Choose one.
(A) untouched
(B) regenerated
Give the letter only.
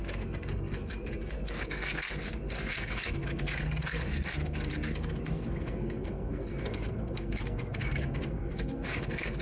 B